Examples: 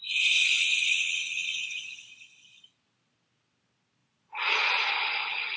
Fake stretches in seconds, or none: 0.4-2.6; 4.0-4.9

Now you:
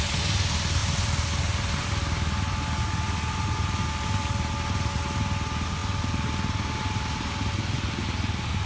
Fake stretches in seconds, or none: 0.8-1.9

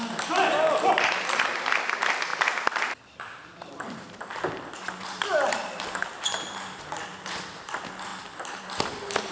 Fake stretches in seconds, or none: none